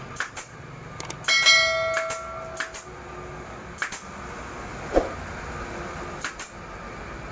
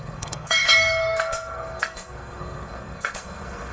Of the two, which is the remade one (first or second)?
second